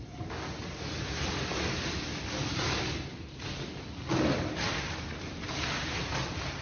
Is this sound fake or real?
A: real